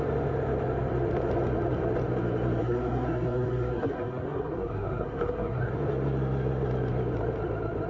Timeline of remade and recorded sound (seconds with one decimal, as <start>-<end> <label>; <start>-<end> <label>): 0.0-2.6 recorded; 2.6-5.7 remade; 5.7-7.9 recorded